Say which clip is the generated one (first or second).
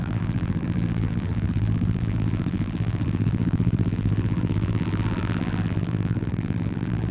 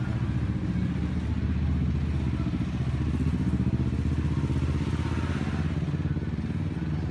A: first